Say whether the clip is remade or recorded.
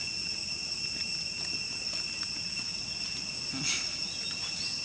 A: recorded